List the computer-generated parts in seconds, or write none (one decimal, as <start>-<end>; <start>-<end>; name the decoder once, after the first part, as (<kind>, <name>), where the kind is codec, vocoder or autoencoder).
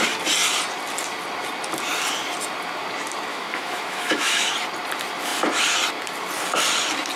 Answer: 3.3-4.5 (autoencoder, DAC-VAE)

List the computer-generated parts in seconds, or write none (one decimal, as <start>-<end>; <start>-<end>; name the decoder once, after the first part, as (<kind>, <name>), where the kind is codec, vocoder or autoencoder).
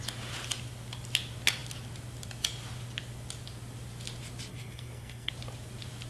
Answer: 4.5-5.3 (codec, SNAC)